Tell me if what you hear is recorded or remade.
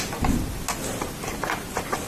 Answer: recorded